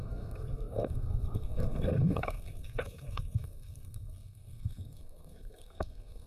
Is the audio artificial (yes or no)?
yes